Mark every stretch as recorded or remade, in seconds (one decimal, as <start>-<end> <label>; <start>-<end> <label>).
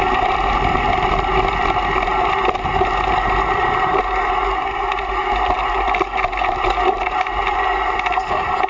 0.0-8.7 recorded